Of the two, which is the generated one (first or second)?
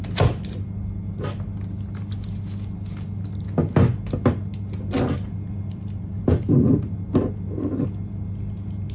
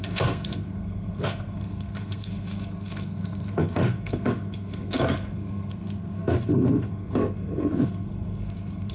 second